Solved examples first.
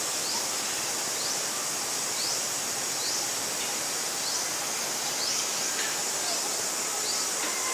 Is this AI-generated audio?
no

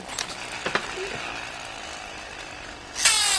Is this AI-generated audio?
no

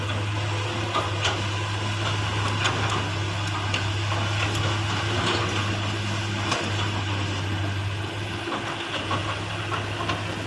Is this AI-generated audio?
no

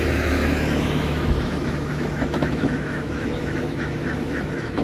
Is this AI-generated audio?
yes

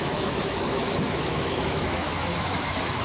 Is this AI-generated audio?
yes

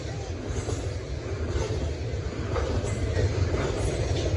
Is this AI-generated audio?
no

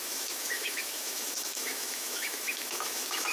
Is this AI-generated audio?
yes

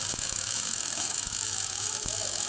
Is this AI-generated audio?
yes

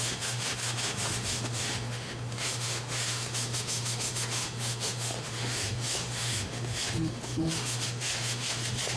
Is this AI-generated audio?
yes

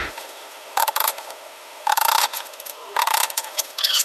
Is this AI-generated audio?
yes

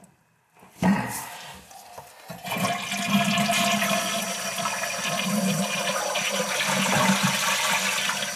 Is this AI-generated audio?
no